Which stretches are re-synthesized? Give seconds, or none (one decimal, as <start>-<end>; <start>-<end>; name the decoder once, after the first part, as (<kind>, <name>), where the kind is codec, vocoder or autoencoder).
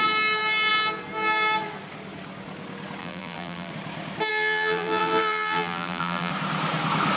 3.0-3.7 (vocoder, BigVGAN v2); 4.3-6.3